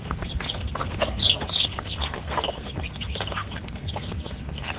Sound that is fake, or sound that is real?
fake